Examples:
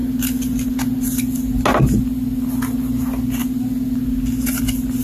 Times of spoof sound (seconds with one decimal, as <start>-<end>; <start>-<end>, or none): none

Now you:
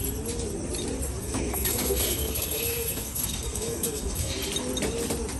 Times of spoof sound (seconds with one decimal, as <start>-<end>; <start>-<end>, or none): 1.2-4.4

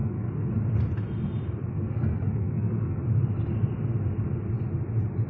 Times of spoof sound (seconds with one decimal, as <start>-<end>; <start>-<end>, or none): 0.0-0.5; 1.7-3.0

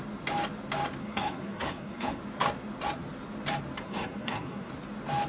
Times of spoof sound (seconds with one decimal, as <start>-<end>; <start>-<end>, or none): 1.0-2.2; 3.8-4.7

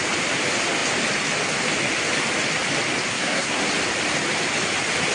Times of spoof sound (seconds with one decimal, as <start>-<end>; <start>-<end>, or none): 3.1-3.7

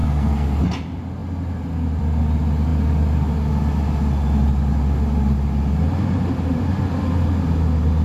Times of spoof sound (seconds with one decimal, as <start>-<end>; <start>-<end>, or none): 0.0-0.6

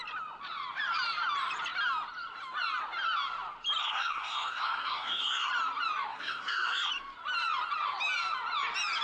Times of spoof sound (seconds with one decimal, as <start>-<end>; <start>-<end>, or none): 3.8-5.5; 6.1-6.9

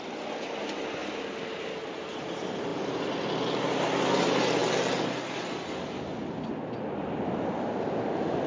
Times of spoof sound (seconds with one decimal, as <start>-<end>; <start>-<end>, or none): none